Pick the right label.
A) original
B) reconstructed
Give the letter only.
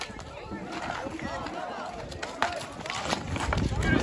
A